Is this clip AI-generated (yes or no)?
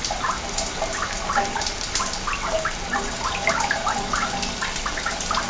no